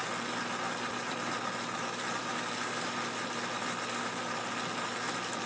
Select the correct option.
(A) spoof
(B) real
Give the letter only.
B